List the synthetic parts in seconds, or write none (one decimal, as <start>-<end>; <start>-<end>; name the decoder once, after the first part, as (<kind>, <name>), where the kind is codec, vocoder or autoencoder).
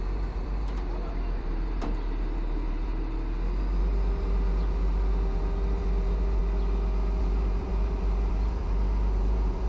0.0-2.9 (vocoder, BigVGAN v2); 3.8-6.4; 7.2-9.7